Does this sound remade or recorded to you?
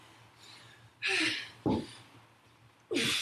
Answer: recorded